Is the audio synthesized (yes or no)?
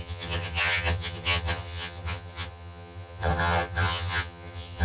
yes